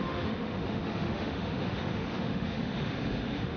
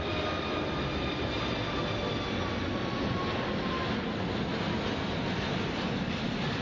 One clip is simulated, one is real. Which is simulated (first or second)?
first